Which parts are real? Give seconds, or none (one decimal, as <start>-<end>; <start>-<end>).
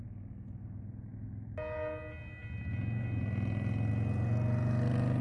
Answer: 0.0-5.2